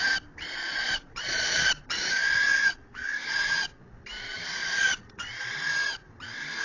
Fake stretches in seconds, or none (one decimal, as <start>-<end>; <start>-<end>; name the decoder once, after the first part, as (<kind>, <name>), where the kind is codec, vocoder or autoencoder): 0.7-4.0 (vocoder, Vocos); 4.6-5.4